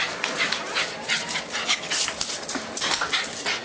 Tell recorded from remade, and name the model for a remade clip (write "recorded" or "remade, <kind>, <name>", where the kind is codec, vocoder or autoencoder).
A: recorded